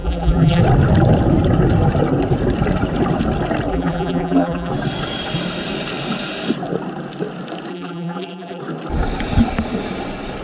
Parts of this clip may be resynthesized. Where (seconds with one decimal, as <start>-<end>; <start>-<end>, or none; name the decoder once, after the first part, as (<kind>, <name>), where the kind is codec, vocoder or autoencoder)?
0.0-0.6 (vocoder, BigVGAN v2); 3.7-4.7; 7.7-8.6